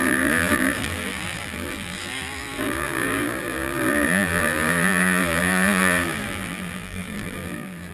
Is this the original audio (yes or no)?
no